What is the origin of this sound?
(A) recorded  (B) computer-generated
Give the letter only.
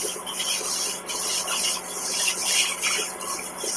A